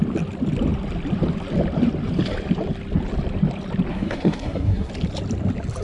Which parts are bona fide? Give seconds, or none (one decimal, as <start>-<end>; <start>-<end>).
0.0-3.9; 4.9-5.8